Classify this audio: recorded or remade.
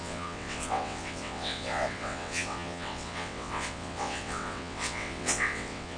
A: remade